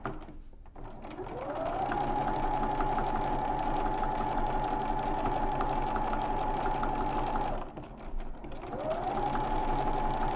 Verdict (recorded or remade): recorded